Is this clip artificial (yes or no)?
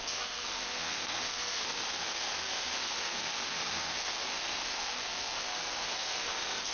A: yes